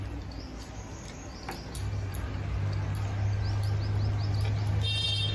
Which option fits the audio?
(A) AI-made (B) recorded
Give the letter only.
B